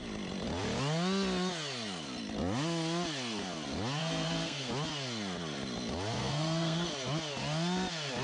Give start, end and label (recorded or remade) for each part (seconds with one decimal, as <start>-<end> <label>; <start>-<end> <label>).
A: 0.0-4.0 recorded; 4.0-4.7 remade; 4.7-6.2 recorded; 6.2-6.9 remade; 6.9-8.2 recorded